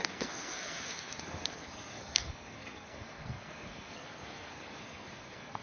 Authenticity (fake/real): fake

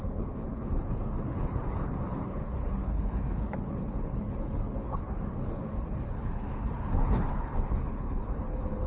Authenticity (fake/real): fake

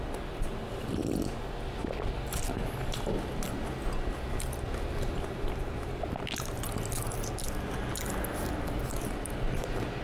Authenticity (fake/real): real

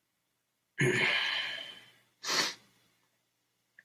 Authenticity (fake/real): real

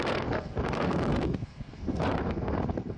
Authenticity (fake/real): fake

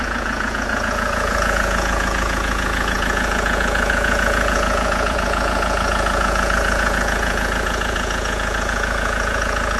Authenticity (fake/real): fake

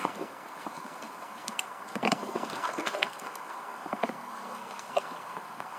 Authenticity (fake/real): fake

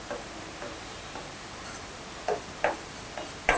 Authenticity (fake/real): real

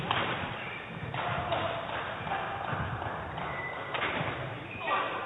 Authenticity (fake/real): real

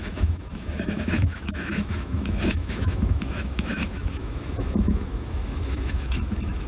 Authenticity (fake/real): fake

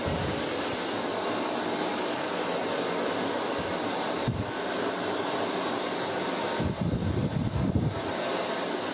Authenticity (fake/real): real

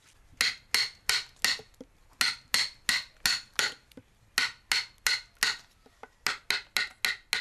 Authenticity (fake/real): real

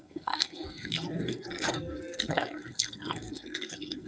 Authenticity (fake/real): fake